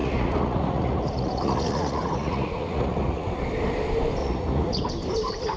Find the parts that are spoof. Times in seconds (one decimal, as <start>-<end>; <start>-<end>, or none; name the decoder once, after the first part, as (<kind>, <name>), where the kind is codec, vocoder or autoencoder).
0.0-3.4 (vocoder, Vocos); 4.2-4.9